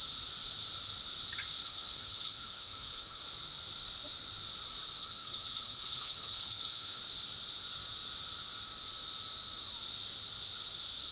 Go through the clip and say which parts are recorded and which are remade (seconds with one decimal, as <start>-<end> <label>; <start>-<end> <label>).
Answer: 0.0-1.6 recorded; 1.6-3.2 remade; 3.2-5.0 recorded; 5.0-7.0 remade; 7.0-11.1 recorded